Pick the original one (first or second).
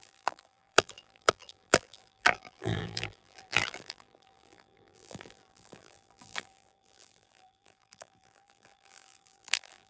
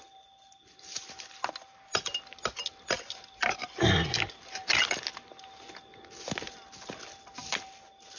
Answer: second